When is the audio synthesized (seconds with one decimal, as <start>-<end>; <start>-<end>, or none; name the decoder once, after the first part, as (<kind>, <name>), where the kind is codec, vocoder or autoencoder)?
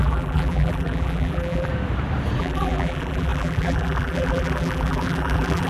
0.0-1.7 (vocoder, BigVGAN v2); 2.4-5.7